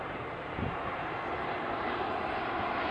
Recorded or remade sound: remade